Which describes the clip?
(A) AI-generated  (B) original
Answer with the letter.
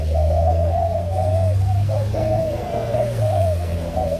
A